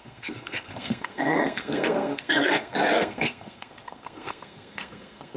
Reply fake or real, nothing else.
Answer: fake